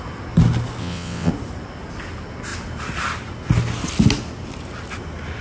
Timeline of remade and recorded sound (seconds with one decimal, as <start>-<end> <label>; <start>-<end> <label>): 0.0-0.8 recorded; 0.8-1.3 remade; 1.3-5.4 recorded